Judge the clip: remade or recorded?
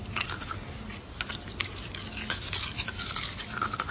recorded